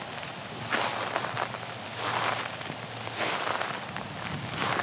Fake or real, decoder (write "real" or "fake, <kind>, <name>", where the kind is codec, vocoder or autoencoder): real